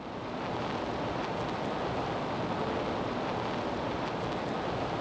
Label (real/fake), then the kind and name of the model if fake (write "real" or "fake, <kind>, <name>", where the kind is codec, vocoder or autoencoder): real